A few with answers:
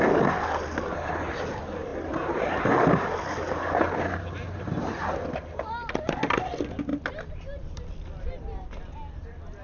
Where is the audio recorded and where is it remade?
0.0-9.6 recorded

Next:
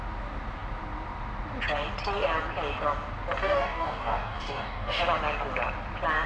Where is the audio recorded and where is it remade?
0.0-3.4 recorded; 3.4-5.0 remade; 5.0-6.3 recorded

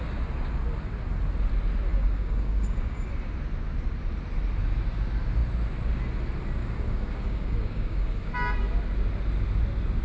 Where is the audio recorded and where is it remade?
0.0-1.9 recorded; 1.9-3.1 remade; 3.1-6.6 recorded; 6.6-8.3 remade; 8.3-10.0 recorded